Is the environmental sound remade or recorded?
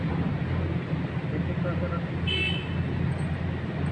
recorded